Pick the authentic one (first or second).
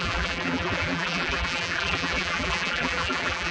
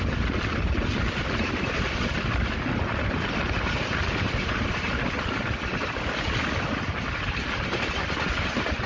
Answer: second